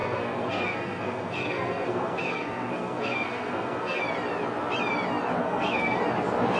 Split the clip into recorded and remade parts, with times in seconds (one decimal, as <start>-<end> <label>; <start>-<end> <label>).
0.0-4.0 remade; 4.0-5.4 recorded; 5.4-6.0 remade; 6.0-6.6 recorded